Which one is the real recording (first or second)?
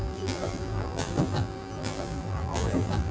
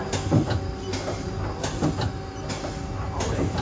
second